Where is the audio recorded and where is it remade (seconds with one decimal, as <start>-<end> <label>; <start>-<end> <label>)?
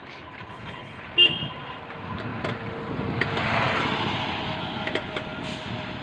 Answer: 0.0-0.5 recorded; 0.5-1.0 remade; 1.0-6.0 recorded